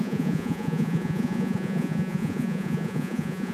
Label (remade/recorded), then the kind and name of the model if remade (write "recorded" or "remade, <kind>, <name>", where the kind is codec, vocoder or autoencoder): remade, vocoder, Vocos